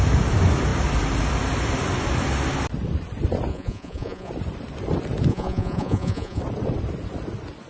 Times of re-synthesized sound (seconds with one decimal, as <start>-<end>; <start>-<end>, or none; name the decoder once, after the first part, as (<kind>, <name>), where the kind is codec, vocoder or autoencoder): 3.5-4.3 (vocoder, Vocos); 5.3-6.4